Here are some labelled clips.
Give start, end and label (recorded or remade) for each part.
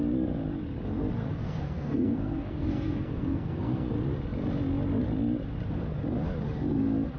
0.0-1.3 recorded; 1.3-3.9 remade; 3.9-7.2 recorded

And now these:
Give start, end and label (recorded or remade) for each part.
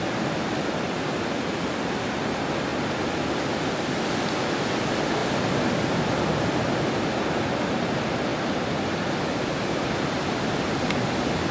0.0-11.5 recorded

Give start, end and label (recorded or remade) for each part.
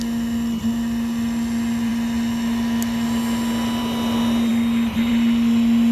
0.0-5.9 recorded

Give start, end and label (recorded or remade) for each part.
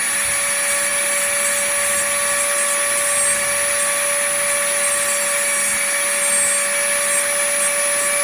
0.0-8.2 recorded